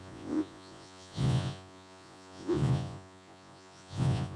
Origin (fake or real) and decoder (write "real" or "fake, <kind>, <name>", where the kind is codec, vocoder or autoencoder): fake, vocoder, Vocos